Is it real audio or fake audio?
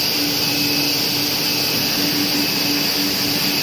real